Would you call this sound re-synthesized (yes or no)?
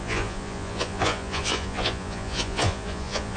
yes